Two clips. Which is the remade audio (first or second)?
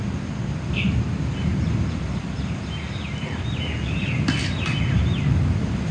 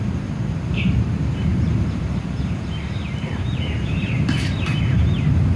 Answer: second